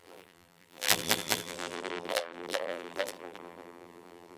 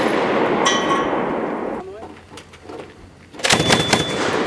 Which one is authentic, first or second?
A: second